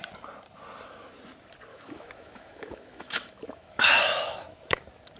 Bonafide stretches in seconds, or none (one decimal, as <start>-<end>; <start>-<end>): 0.0-1.7; 4.8-5.2